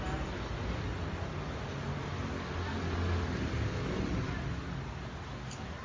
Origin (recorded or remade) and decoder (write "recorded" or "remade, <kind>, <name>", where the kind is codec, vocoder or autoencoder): recorded